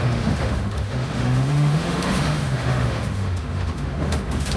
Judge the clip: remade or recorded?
remade